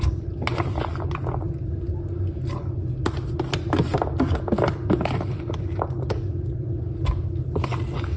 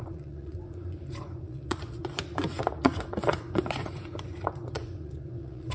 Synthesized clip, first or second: second